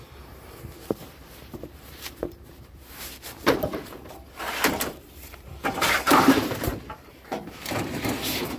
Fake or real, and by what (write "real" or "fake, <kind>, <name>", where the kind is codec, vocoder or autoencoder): fake, vocoder, BigVGAN v2